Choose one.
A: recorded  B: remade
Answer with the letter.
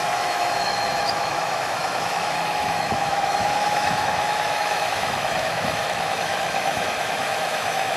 B